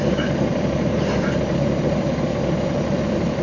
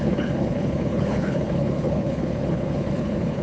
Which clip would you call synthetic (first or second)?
second